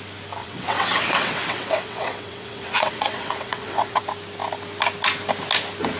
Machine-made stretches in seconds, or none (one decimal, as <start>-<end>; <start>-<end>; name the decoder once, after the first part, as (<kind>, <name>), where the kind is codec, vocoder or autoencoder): 0.4-4.0 (vocoder, WaveNeXt)